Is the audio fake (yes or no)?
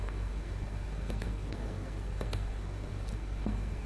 yes